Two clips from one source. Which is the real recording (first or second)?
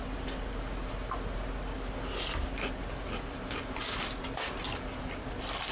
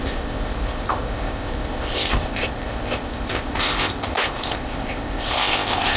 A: first